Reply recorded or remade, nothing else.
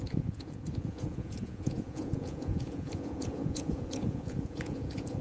remade